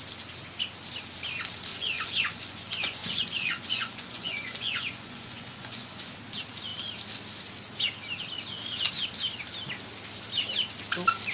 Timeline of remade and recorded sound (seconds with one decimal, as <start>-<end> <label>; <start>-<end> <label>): 0.0-1.7 recorded; 1.7-6.1 remade; 6.1-11.3 recorded